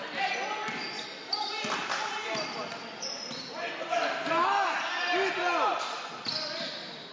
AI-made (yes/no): no